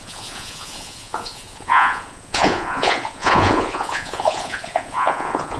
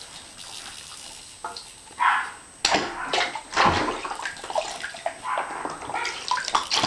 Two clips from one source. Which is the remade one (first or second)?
first